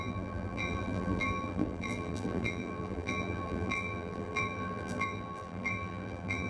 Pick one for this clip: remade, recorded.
remade